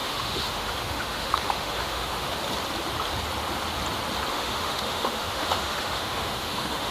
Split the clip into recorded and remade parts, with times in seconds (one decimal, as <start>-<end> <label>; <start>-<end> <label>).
0.0-2.4 remade; 2.4-4.3 recorded; 4.3-6.9 remade